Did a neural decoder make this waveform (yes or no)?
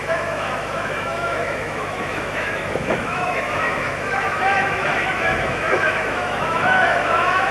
yes